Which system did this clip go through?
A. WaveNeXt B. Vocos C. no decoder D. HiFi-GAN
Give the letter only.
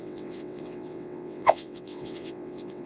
A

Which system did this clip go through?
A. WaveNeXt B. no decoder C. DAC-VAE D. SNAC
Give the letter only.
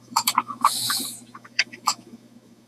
C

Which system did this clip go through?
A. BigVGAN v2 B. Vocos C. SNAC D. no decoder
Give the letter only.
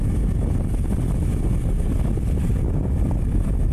D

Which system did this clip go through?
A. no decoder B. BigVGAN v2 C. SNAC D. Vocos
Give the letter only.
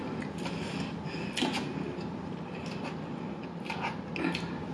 A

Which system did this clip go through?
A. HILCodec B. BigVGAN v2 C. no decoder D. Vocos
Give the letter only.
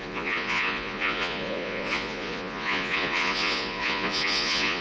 D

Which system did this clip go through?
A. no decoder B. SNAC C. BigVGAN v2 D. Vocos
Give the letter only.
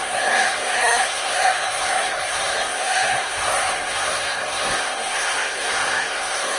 B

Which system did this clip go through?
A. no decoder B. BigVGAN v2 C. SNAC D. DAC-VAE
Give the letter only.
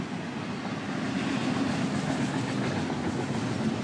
A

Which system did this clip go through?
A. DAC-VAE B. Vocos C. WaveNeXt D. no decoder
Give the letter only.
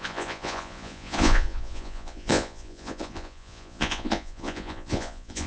B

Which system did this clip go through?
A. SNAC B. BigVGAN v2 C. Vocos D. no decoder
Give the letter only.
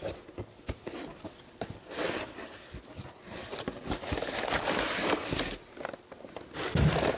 D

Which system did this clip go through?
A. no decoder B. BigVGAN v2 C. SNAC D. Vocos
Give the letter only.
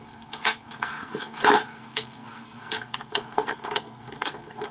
C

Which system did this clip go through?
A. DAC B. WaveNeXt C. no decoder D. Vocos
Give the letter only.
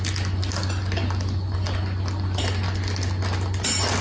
C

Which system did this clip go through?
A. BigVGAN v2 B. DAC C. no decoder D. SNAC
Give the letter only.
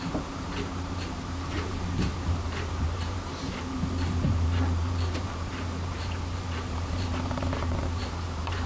A